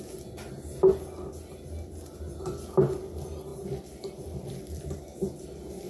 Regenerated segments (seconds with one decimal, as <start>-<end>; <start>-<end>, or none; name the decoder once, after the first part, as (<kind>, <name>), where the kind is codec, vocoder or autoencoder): 3.5-4.6 (vocoder, BigVGAN v2)

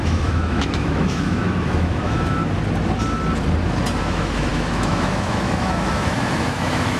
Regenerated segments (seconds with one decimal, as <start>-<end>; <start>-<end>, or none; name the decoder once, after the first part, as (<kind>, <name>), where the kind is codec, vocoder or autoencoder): 0.0-2.4 (autoencoder, DAC-VAE); 4.0-7.0

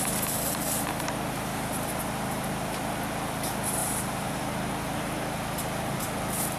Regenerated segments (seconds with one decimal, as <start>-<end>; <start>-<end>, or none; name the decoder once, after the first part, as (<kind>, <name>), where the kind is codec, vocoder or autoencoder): 3.8-4.4 (vocoder, BigVGAN v2)

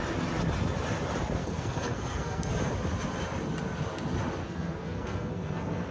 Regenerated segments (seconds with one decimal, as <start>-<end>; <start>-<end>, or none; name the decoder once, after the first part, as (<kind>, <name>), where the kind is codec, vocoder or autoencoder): 1.4-2.5 (codec, SNAC); 4.4-5.9